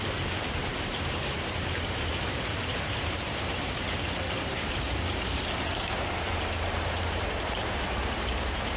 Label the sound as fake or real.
fake